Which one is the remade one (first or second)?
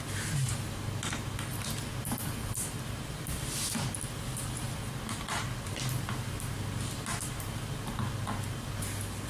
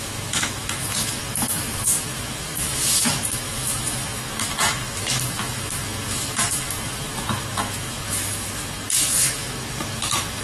second